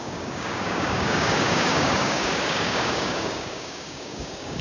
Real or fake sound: fake